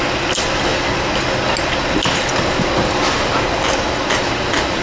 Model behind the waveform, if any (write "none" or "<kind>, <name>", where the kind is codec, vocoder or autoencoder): none